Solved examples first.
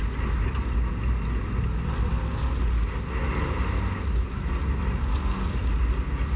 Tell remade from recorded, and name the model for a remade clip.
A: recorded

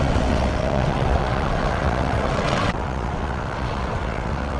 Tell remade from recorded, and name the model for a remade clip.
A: remade, vocoder, WaveNeXt